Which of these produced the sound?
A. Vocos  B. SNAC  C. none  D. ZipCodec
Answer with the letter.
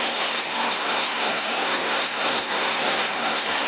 B